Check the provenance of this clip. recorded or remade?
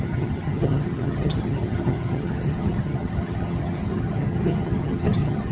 remade